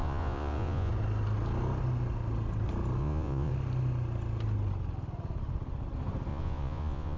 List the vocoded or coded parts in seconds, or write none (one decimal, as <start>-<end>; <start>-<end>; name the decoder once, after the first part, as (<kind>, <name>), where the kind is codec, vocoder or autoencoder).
0.0-0.9 (vocoder, Vocos); 3.0-3.5; 6.3-7.2